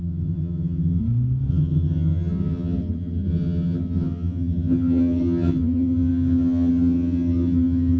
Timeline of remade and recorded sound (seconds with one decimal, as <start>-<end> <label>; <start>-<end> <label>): 0.0-1.0 remade; 1.0-1.5 recorded; 1.5-8.0 remade